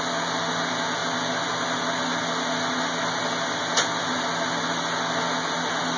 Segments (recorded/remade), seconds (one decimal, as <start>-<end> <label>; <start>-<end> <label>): 0.0-6.0 recorded